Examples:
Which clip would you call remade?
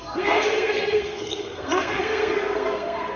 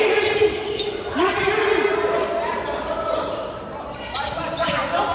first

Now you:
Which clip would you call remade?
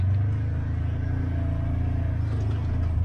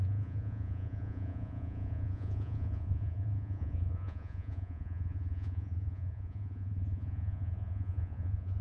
second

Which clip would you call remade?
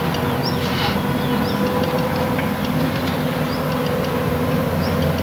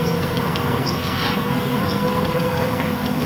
second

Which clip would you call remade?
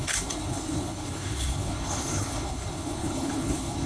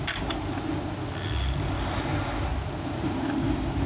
first